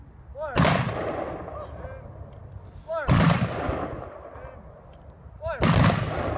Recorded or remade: recorded